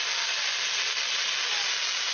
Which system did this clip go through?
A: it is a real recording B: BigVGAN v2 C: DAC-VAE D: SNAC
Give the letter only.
A